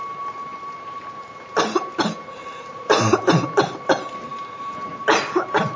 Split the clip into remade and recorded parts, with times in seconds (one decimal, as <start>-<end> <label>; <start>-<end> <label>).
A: 0.0-5.8 recorded